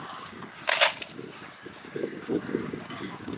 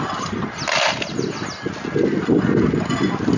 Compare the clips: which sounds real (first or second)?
second